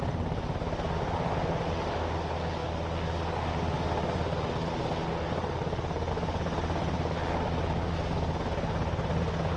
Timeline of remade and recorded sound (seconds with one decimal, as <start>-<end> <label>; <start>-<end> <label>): 0.0-9.6 recorded